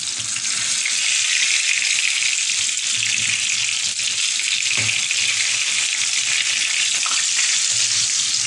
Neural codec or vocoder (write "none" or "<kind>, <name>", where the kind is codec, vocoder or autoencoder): none